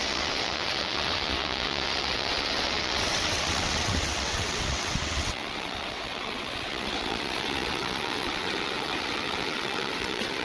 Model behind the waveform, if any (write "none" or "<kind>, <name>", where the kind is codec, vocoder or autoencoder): vocoder, WaveNeXt